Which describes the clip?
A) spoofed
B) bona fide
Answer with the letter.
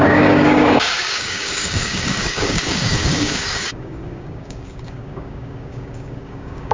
A